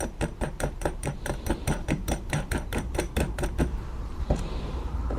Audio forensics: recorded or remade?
remade